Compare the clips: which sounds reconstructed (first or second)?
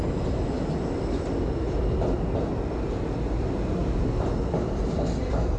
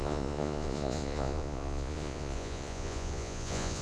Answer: second